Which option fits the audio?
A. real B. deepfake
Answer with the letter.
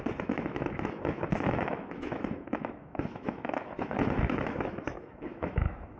B